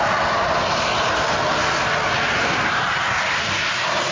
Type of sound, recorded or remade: recorded